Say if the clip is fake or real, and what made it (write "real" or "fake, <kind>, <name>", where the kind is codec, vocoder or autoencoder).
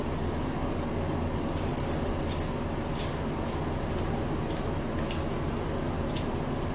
real